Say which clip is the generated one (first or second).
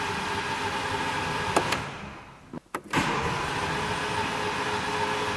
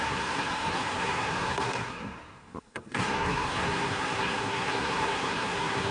second